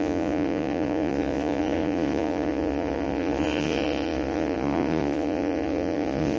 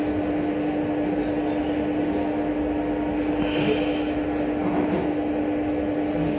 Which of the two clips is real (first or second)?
second